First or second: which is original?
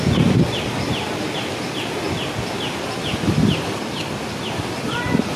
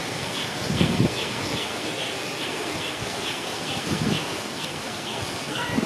first